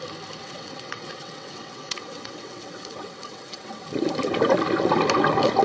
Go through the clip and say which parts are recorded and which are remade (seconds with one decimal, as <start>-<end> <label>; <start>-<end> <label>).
0.0-0.4 recorded; 0.4-3.8 remade; 3.8-5.6 recorded